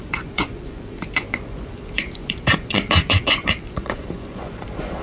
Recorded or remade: remade